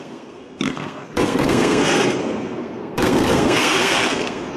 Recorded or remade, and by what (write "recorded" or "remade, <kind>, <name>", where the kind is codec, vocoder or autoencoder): remade, codec, SNAC